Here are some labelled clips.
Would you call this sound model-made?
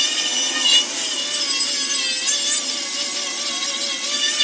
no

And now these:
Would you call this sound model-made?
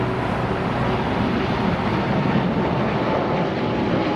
no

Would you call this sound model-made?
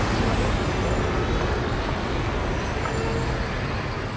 no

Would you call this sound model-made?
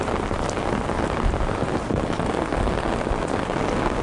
no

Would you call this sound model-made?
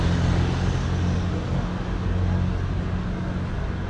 no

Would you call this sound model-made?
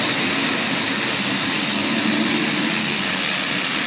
no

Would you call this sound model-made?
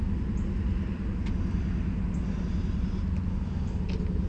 no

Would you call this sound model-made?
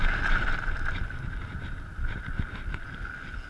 no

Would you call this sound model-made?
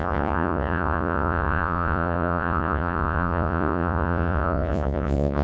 yes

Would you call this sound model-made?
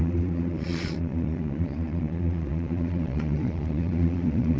yes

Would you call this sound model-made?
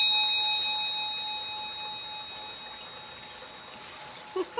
no